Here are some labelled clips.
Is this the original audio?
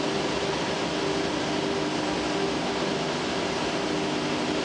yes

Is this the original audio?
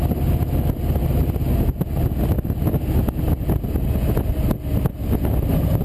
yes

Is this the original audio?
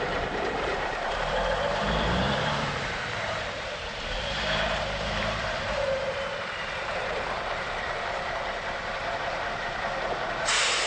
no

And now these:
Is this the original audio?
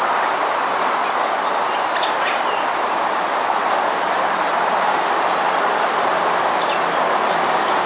no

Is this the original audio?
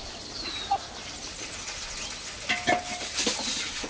yes